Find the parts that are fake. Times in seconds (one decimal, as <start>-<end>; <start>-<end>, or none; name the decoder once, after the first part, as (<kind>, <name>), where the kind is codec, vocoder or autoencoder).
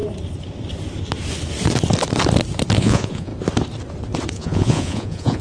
2.8-3.3 (vocoder, Vocos); 4.3-5.4